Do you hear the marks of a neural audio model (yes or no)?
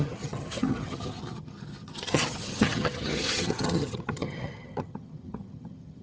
yes